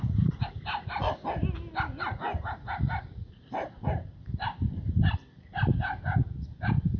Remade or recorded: recorded